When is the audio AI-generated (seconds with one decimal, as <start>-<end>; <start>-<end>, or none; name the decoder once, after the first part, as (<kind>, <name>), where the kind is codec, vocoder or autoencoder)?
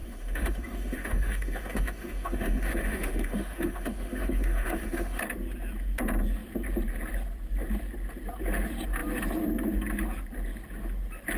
0.0-5.2 (autoencoder, DAC-VAE)